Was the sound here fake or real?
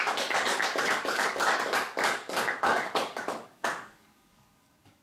fake